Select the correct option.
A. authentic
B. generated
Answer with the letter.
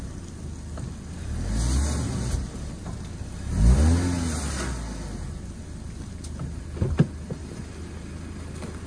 A